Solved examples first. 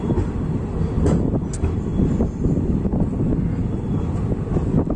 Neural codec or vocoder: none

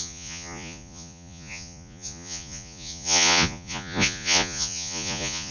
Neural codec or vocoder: vocoder, Vocos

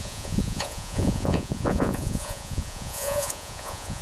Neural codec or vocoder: vocoder, Vocos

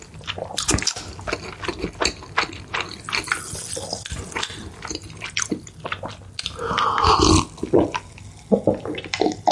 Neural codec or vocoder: none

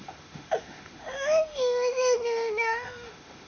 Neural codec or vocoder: autoencoder, DAC-VAE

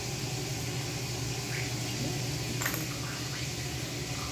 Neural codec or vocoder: none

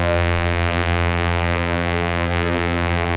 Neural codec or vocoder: vocoder, BigVGAN v2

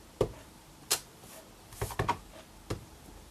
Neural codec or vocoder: none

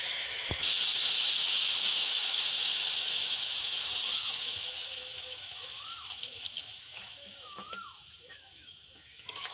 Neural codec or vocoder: autoencoder, DAC-VAE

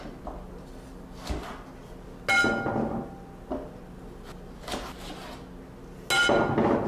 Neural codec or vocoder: none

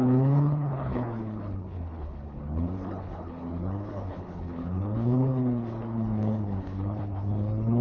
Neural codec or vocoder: codec, HILCodec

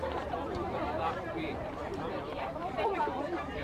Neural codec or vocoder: vocoder, BigVGAN v2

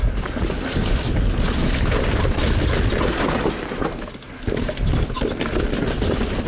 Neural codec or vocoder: none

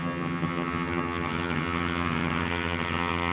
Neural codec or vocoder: vocoder, HiFi-GAN